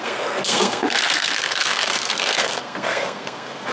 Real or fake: fake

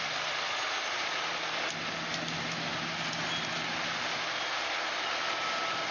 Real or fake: real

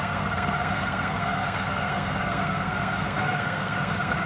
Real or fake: fake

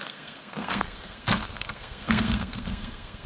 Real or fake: fake